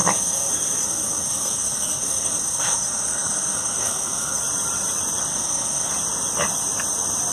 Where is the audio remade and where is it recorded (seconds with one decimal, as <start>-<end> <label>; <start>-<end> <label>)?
0.0-4.4 remade; 4.4-5.3 recorded; 5.3-5.9 remade; 5.9-7.3 recorded